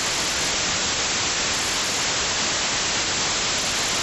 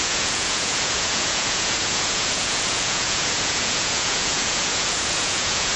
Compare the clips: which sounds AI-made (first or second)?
second